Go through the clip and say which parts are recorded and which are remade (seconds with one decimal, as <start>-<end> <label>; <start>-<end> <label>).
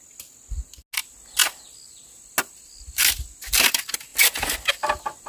0.0-5.3 recorded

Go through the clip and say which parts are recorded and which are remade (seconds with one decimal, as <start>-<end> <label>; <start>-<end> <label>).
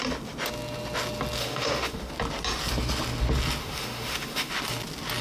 0.0-1.4 recorded; 1.4-2.1 remade; 2.1-3.6 recorded; 3.6-4.5 remade; 4.5-5.2 recorded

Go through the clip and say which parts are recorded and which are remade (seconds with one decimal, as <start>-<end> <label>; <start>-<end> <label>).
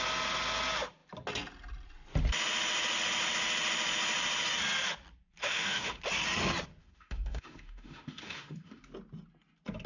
0.0-5.4 recorded; 5.4-6.0 remade; 6.0-6.8 recorded; 6.8-8.8 remade; 8.8-9.9 recorded